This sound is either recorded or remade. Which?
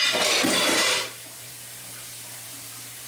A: remade